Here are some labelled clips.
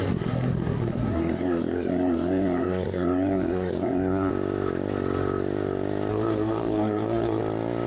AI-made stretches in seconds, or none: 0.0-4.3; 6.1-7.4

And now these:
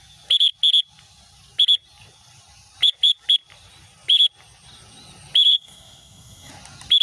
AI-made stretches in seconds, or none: 5.5-6.5

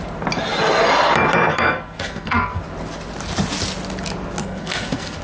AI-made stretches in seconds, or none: 1.5-2.6; 4.4-5.2

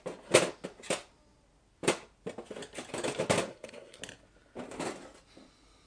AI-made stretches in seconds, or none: 3.5-4.0

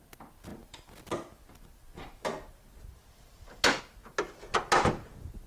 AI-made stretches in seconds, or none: none

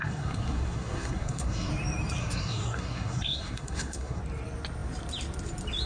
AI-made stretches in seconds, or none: 0.0-1.7; 2.2-4.2

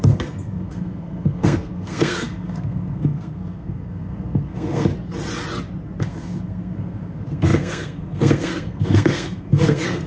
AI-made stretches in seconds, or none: 0.0-4.9; 6.0-10.1

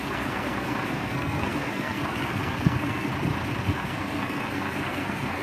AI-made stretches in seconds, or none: 0.0-3.1; 3.6-5.4